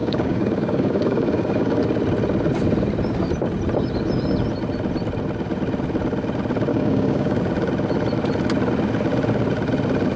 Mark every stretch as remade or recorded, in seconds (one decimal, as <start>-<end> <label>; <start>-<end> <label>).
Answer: 0.0-1.8 remade; 1.8-6.7 recorded; 6.7-7.4 remade; 7.4-10.2 recorded